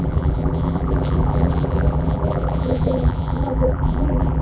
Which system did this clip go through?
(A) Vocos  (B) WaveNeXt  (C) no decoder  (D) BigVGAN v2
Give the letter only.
D